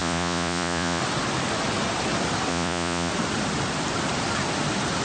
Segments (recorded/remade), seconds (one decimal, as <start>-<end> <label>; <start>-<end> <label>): 0.0-1.0 remade; 1.0-2.5 recorded; 2.5-3.1 remade; 3.1-5.0 recorded